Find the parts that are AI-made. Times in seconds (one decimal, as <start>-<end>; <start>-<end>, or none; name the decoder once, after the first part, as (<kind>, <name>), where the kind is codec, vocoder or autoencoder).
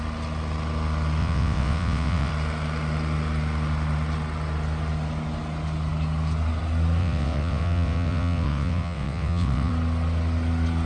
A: 1.2-2.3 (vocoder, WaveNeXt); 7.0-9.7